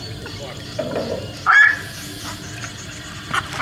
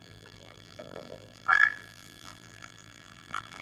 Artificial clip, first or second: second